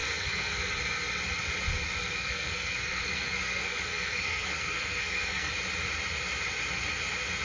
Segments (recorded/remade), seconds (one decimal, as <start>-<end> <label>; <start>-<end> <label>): 0.0-0.7 remade; 0.7-2.0 recorded; 2.0-5.5 remade; 5.5-7.4 recorded